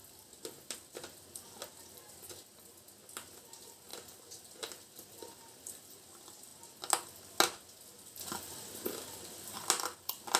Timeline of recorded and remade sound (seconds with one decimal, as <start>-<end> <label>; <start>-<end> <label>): 0.0-3.9 recorded; 3.9-6.0 remade; 6.0-8.2 recorded; 8.2-9.7 remade; 9.7-10.4 recorded